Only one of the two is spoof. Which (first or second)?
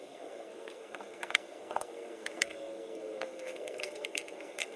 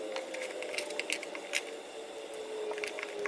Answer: first